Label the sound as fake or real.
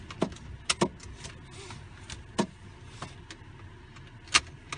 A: real